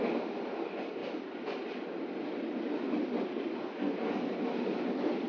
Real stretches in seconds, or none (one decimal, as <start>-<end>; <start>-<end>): 0.0-3.6; 4.4-5.3